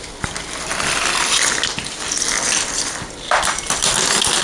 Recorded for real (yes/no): yes